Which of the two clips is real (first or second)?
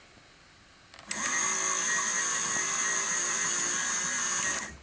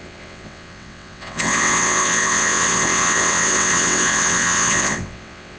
first